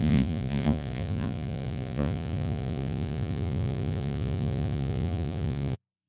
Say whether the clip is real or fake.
fake